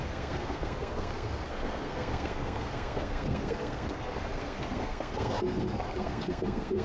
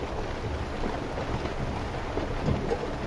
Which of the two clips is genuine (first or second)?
second